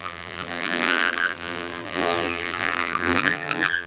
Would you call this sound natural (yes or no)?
no